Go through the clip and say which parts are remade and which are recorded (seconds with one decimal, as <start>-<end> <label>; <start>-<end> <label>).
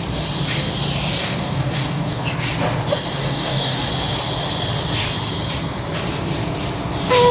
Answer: 0.0-1.2 recorded; 1.2-2.2 remade; 2.2-3.2 recorded; 3.2-3.9 remade; 3.9-7.3 recorded